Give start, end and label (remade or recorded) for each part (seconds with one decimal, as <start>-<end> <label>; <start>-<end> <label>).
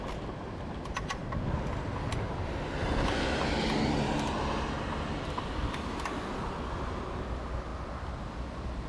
0.0-8.9 recorded